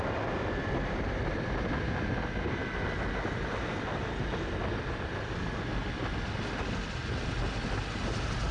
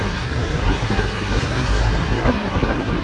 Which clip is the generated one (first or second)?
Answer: second